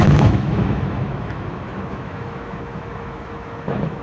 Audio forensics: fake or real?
fake